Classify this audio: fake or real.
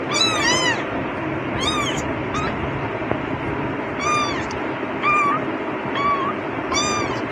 real